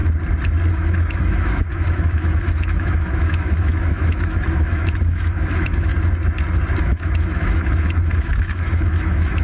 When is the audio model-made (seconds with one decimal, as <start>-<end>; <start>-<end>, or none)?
0.7-5.9; 6.8-9.4